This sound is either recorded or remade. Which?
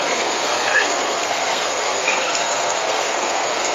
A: remade